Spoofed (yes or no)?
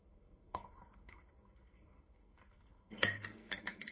yes